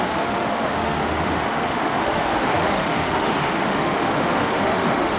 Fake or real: fake